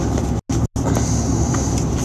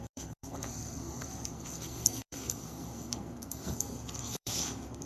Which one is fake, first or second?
second